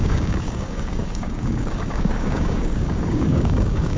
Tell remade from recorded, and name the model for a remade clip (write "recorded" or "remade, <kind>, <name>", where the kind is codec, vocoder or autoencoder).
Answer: remade, codec, DAC